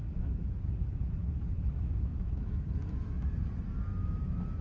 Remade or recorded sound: remade